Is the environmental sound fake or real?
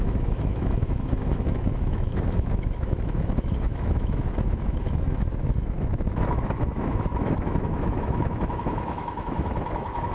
fake